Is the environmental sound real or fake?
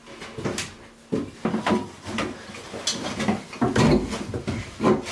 real